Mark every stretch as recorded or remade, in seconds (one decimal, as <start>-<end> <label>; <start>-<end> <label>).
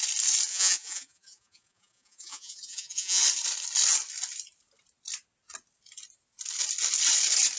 0.0-0.5 recorded; 0.5-3.2 remade; 3.2-7.6 recorded